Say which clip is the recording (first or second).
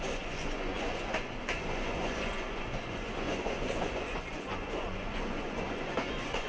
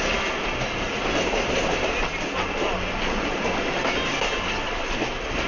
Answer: second